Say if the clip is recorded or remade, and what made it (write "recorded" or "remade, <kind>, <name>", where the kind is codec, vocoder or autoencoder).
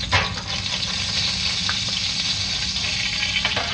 recorded